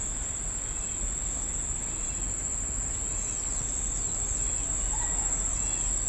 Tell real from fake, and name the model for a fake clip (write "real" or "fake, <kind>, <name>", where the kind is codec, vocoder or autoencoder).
real